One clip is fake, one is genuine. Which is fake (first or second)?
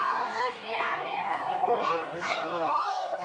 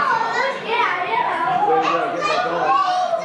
first